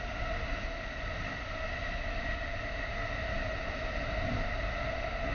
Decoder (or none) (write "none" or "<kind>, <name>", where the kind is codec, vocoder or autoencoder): none